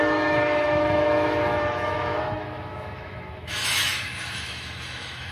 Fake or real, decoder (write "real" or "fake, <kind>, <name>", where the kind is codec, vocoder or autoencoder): fake, autoencoder, DAC-VAE